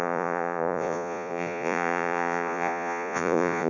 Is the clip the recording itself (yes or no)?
no